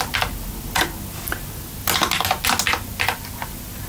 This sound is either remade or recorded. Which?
recorded